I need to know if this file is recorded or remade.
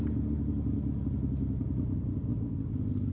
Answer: recorded